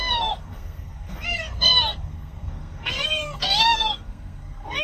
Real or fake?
fake